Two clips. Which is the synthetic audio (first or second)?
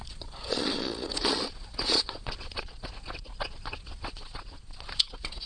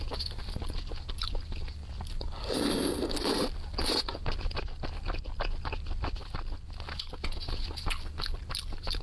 first